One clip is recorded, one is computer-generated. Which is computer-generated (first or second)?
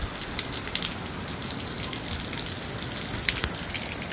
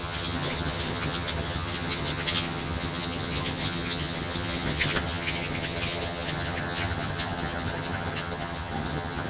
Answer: second